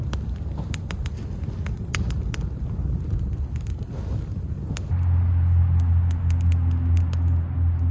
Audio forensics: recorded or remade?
recorded